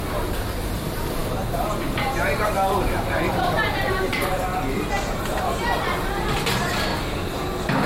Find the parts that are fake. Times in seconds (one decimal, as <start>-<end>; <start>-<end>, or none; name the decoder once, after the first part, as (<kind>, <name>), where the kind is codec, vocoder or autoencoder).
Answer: 0.0-4.5 (vocoder, BigVGAN v2); 5.4-6.9